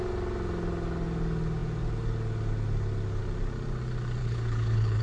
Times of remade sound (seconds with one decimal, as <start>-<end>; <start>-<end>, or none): 4.2-5.0